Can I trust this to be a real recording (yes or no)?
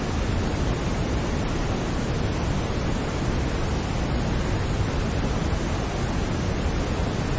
yes